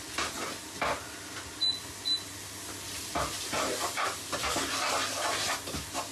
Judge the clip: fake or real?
real